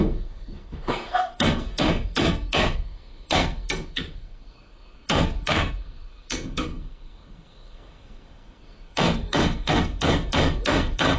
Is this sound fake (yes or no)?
yes